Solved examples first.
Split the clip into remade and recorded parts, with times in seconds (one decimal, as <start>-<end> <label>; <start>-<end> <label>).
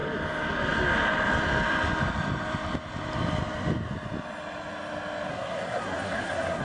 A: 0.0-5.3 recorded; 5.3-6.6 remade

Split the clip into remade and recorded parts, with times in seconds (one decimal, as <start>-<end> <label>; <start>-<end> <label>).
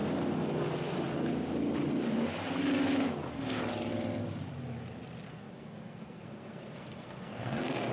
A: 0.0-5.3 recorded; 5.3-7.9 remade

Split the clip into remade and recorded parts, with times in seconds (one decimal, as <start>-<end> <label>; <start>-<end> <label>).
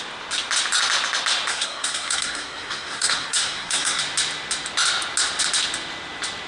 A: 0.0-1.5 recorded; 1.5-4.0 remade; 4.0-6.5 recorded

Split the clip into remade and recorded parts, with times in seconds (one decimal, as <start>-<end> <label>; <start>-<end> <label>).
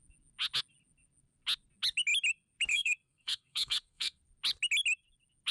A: 0.0-2.7 recorded; 2.7-4.2 remade; 4.2-5.5 recorded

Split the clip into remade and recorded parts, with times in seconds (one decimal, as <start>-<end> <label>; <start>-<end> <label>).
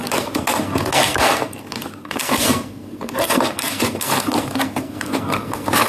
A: 0.0-5.9 remade